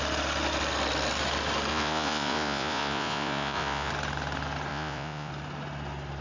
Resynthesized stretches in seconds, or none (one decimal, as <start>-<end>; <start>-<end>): 1.7-3.9; 4.7-5.3